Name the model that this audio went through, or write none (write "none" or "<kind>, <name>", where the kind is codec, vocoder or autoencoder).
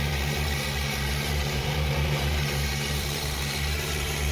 vocoder, BigVGAN v2